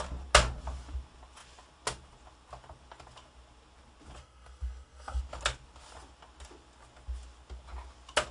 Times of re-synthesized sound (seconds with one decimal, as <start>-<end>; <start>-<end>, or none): 4.2-5.2